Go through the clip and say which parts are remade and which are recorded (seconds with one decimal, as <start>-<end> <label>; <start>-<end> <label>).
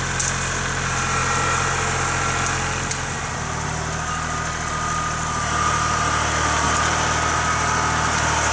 0.0-8.5 recorded